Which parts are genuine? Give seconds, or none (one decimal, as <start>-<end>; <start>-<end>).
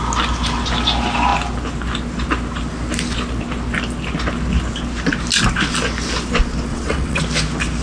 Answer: 0.0-6.7; 7.2-7.8